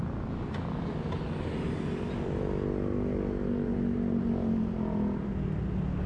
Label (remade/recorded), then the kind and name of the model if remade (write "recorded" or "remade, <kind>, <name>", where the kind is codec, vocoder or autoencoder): recorded